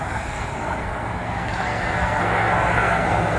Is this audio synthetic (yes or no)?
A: yes